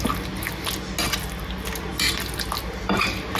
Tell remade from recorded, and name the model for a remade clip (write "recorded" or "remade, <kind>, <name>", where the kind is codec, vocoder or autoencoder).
recorded